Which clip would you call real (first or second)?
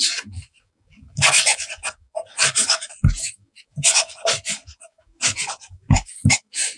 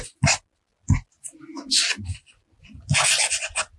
second